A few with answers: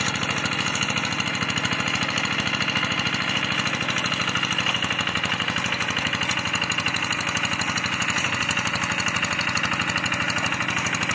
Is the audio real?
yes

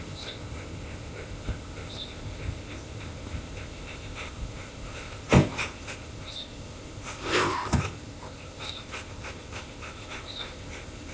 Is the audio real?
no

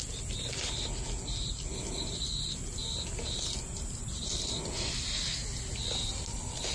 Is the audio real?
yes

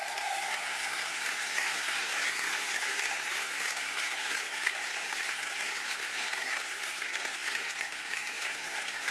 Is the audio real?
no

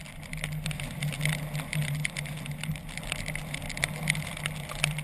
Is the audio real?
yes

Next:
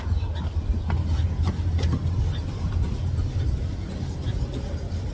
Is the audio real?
yes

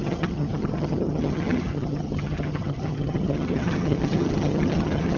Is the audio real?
no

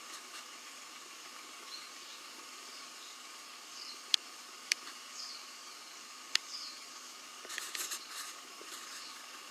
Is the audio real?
no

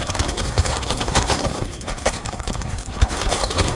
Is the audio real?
no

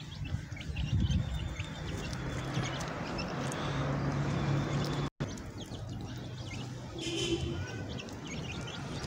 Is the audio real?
yes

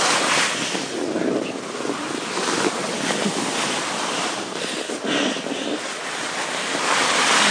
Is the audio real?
yes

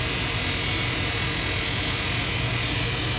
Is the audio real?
yes